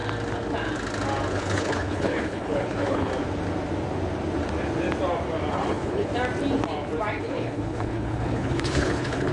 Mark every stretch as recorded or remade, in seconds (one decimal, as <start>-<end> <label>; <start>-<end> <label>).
0.0-1.3 recorded; 1.3-3.1 remade; 3.1-5.5 recorded; 5.5-6.1 remade; 6.1-7.2 recorded; 7.2-9.3 remade

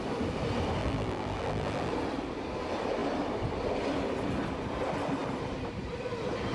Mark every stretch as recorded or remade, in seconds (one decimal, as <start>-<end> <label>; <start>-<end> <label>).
0.0-0.8 recorded; 0.8-1.9 remade; 1.9-6.5 recorded